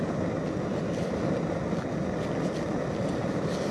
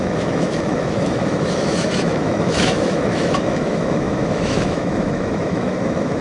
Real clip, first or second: first